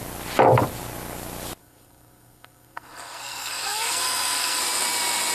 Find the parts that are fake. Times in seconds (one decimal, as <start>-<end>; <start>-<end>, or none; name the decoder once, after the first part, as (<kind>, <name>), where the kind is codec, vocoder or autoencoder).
1.6-4.6 (codec, SNAC)